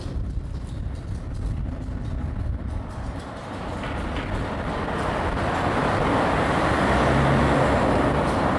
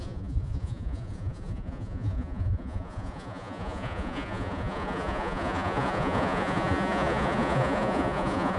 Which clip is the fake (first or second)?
second